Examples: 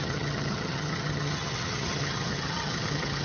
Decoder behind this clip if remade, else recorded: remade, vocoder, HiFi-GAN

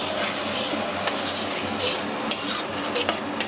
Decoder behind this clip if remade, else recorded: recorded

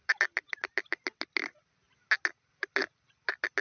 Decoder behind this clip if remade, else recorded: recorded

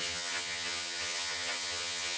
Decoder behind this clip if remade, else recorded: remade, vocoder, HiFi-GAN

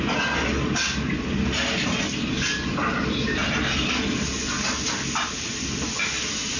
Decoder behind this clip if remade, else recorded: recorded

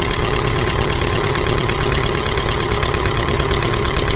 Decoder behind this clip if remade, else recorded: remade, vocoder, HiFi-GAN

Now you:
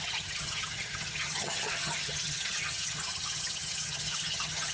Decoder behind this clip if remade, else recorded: remade, vocoder, HiFi-GAN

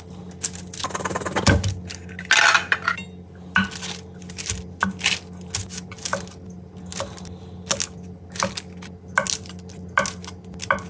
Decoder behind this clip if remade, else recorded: recorded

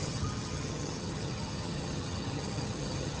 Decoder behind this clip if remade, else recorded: remade, vocoder, HiFi-GAN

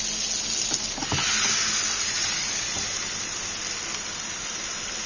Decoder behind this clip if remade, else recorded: recorded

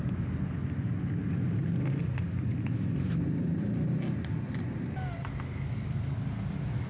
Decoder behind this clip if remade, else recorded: recorded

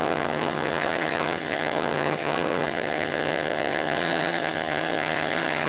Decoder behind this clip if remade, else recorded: remade, vocoder, HiFi-GAN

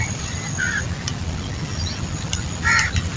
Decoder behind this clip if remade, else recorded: recorded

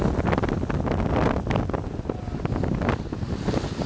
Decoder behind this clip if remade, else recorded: recorded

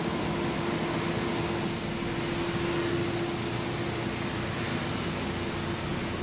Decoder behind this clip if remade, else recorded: recorded